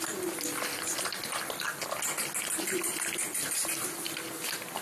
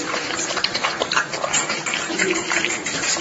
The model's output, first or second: second